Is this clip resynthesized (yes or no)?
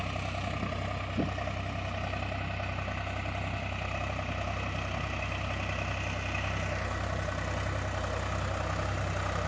no